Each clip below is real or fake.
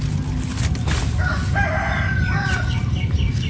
real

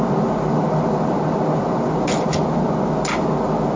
real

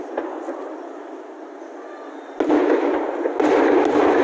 real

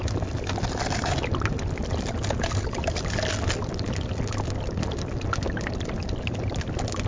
real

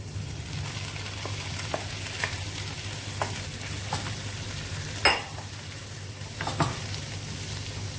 real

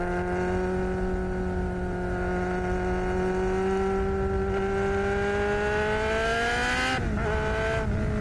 real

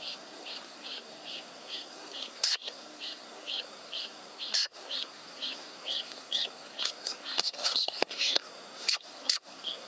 fake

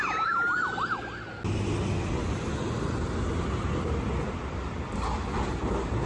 real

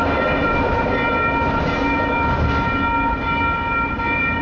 fake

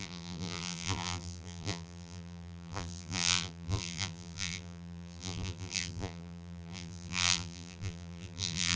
fake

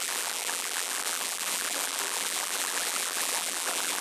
fake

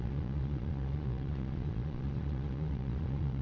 fake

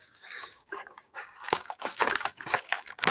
fake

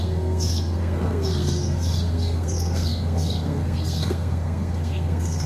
fake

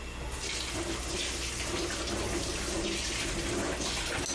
real